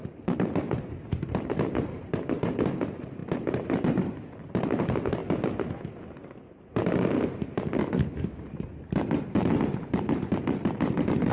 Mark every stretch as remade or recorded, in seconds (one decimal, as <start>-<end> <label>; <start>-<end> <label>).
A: 0.0-1.0 remade; 1.0-1.5 recorded; 1.5-5.2 remade; 5.2-6.1 recorded; 6.1-11.3 remade